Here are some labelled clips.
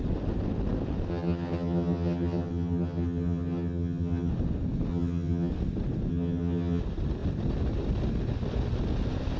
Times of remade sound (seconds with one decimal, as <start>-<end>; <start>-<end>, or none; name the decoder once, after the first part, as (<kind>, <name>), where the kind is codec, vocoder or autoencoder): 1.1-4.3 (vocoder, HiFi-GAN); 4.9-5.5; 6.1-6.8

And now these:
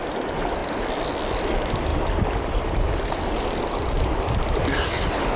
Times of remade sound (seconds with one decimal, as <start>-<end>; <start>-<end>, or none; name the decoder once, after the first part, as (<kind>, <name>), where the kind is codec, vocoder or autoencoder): none

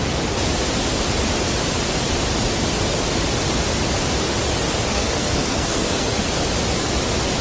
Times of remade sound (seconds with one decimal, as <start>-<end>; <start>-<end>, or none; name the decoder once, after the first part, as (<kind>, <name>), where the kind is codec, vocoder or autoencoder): 4.9-6.3 (codec, SNAC)